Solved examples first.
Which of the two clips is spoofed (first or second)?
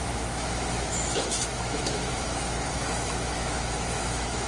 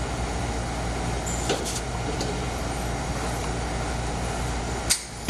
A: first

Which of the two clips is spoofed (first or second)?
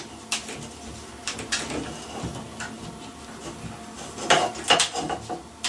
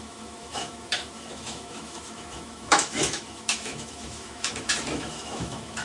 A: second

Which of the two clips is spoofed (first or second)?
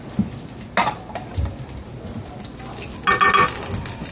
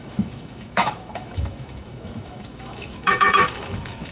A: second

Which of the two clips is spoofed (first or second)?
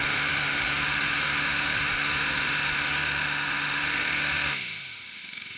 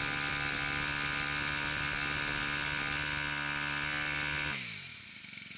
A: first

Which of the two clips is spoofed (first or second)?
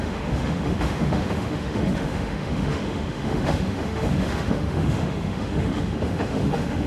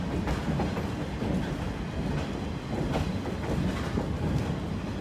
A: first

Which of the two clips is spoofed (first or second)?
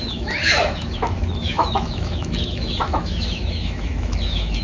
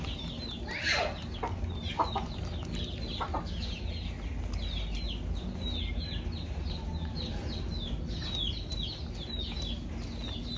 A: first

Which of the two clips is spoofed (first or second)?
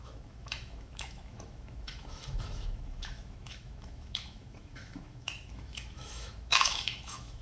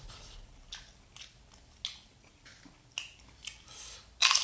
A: first